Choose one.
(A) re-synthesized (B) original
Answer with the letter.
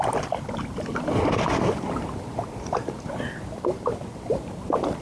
A